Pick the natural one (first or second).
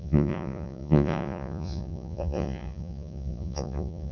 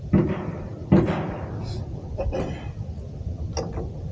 second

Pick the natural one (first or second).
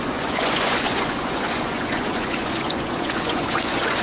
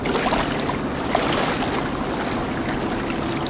second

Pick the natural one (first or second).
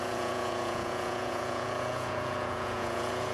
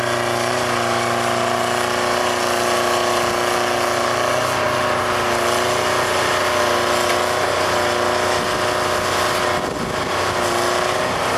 second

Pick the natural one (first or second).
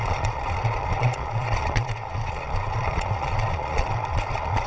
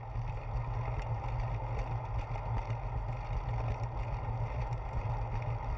second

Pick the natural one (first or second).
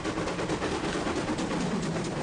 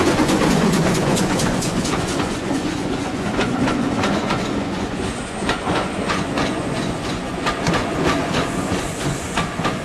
first